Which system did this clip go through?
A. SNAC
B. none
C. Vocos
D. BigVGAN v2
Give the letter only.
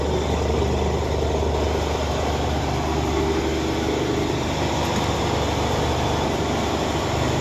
B